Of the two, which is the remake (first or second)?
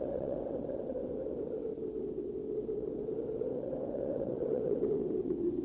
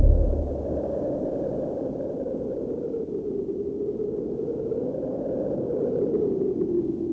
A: first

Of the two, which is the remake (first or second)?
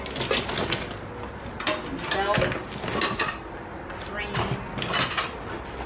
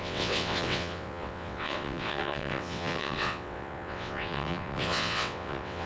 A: second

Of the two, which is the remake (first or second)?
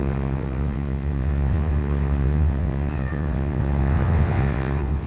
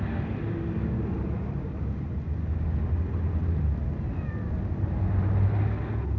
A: first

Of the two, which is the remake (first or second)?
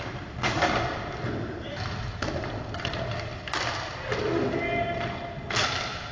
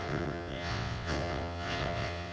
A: second